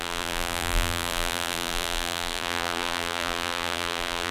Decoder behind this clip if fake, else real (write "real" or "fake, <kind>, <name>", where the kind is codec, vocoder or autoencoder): fake, vocoder, BigVGAN v2